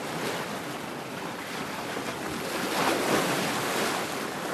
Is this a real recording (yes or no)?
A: yes